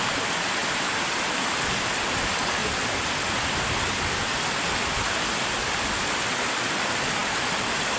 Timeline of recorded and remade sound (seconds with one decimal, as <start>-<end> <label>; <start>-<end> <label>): 0.0-0.6 recorded; 0.6-1.9 remade; 1.9-2.6 recorded; 2.6-5.5 remade; 5.5-8.0 recorded